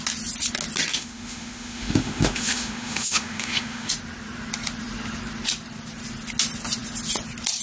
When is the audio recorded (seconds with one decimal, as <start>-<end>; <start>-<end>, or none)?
0.0-0.9; 3.9-7.6